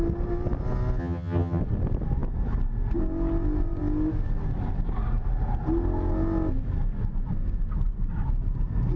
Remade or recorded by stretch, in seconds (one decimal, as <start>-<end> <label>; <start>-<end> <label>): 0.0-1.0 recorded; 1.0-1.6 remade; 1.6-9.0 recorded